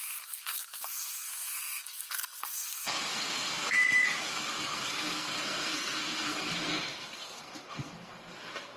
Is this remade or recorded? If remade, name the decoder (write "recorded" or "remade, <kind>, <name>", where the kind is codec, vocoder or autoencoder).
remade, codec, SNAC